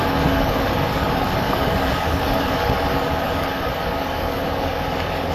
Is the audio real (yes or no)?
no